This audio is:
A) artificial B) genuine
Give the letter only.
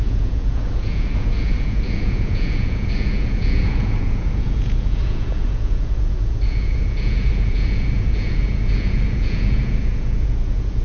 A